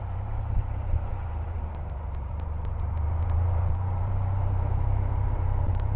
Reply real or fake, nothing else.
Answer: fake